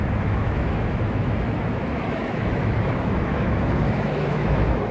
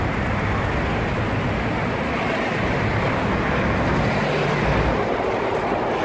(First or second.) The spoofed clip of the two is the first